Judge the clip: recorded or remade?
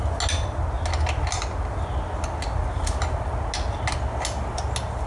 recorded